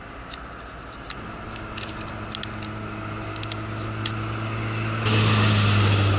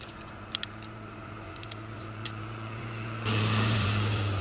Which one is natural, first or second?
first